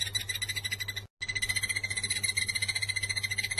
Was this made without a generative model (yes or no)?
yes